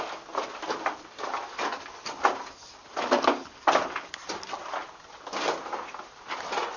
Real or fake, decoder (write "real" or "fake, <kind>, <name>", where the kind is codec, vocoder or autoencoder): real